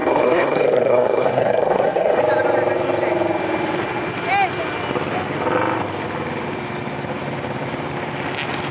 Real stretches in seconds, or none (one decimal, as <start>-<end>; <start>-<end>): 2.2-8.7